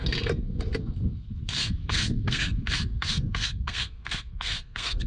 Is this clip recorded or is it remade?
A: remade